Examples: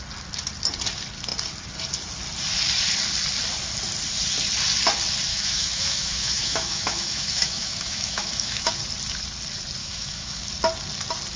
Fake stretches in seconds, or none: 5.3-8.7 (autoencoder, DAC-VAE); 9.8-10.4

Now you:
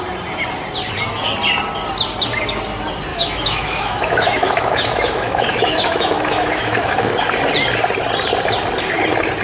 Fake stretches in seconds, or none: 3.1-7.0 (autoencoder, DAC-VAE)

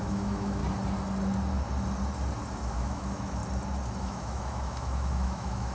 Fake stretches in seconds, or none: 0.0-0.6 (autoencoder, DAC-VAE); 2.6-3.4; 4.0-5.7

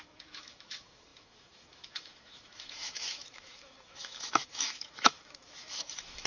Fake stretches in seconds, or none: 0.0-6.3 (autoencoder, DAC-VAE)

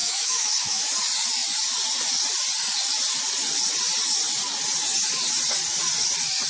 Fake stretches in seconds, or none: 0.0-0.8 (autoencoder, DAC-VAE)